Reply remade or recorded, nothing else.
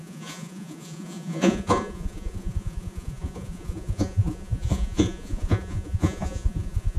remade